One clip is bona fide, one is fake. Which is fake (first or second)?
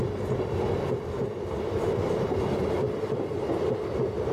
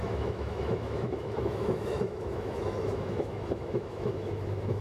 second